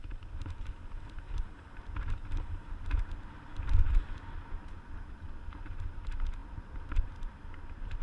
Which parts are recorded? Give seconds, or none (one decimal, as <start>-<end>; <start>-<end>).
0.0-8.0